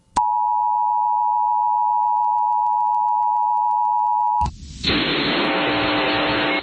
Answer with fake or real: real